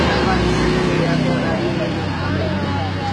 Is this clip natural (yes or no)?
yes